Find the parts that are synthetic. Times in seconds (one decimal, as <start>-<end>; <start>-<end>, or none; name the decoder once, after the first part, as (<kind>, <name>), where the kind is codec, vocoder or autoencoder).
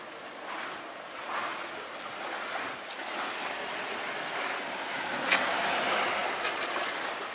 none